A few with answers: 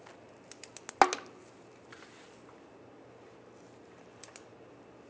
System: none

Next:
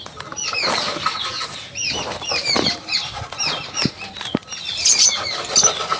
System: none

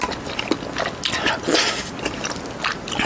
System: none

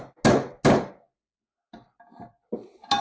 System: none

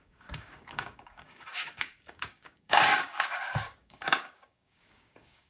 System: codec, DAC